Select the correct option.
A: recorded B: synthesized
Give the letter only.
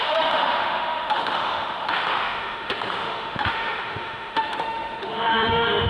B